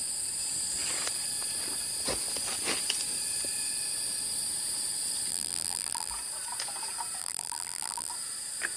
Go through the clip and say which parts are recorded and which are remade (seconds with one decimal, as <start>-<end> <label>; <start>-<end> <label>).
0.0-5.3 recorded; 5.3-6.1 remade; 6.1-7.2 recorded; 7.2-8.1 remade; 8.1-8.8 recorded